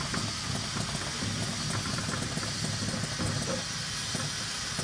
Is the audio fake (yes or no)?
no